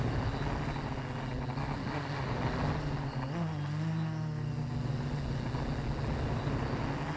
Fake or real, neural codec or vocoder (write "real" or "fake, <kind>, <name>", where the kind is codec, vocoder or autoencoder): real